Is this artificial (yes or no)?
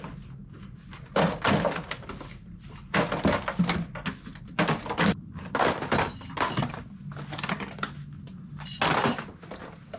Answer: no